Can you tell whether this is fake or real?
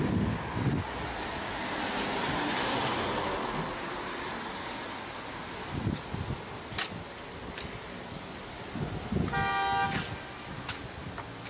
real